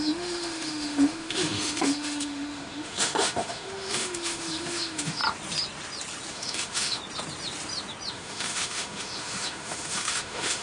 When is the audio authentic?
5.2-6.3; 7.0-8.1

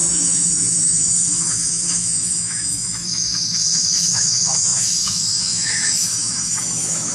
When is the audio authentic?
none

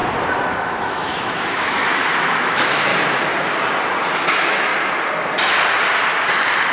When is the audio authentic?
0.0-0.5; 2.9-4.3; 4.7-6.7

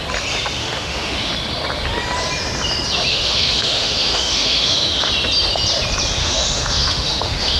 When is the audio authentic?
0.0-0.6; 1.3-3.1; 5.1-6.2

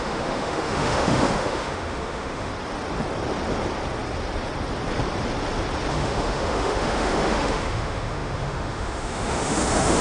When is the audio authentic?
2.5-5.9

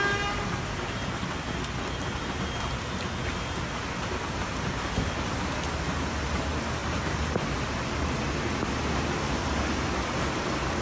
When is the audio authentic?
0.0-10.8

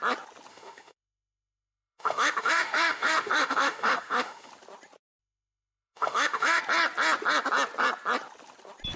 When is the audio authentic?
0.0-0.5; 4.5-5.2; 6.6-9.0